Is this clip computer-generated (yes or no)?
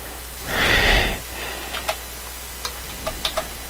no